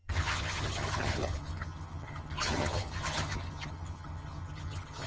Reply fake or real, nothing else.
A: fake